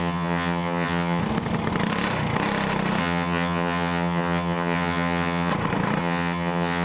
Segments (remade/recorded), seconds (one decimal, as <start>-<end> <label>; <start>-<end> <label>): 0.0-1.2 remade; 1.2-3.0 recorded; 3.0-5.5 remade; 5.5-6.0 recorded; 6.0-6.8 remade